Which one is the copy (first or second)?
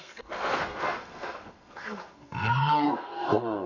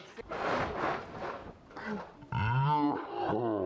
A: first